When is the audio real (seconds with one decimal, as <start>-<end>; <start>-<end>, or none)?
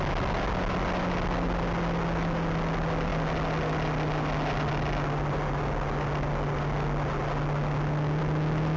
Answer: 0.0-8.8